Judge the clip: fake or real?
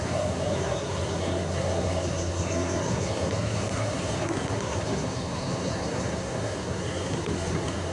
fake